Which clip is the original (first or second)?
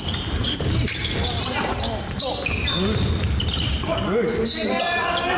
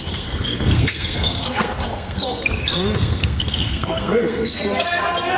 first